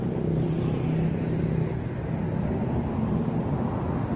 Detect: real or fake real